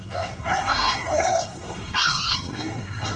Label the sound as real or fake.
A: fake